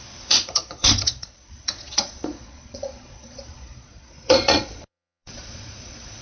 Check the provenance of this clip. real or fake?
fake